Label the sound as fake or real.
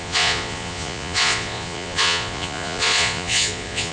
fake